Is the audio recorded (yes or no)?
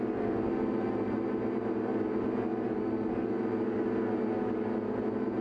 yes